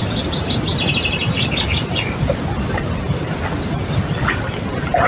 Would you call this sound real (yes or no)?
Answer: yes